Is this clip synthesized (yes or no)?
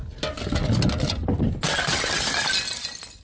no